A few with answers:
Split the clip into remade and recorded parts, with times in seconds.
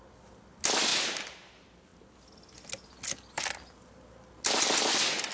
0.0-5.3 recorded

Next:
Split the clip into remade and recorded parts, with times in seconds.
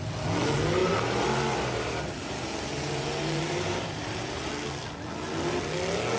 0.0-0.8 recorded; 0.8-4.5 remade; 4.5-6.2 recorded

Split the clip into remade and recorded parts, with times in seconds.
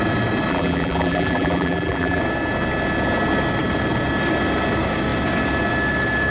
0.0-0.5 recorded; 0.5-2.2 remade; 2.2-6.3 recorded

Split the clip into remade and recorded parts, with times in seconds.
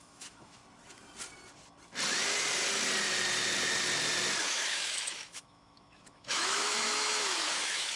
0.0-0.6 remade; 0.6-4.4 recorded; 4.4-8.0 remade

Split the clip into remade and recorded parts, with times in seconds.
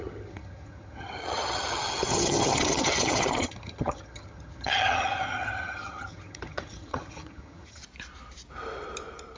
0.0-7.8 remade; 7.8-9.4 recorded